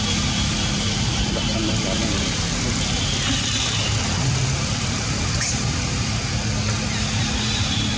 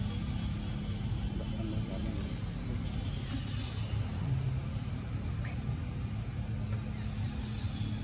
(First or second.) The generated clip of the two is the first